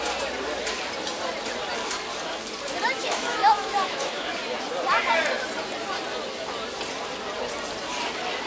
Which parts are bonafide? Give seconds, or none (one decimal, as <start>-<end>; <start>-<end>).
0.0-3.0; 4.3-8.5